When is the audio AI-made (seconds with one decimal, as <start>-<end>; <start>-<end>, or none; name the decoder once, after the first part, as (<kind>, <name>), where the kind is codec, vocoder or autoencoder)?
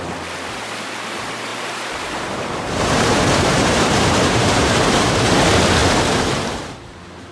1.5-5.3 (vocoder, BigVGAN v2)